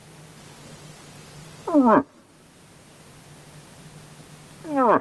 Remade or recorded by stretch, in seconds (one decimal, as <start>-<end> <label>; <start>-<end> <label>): 0.0-5.0 recorded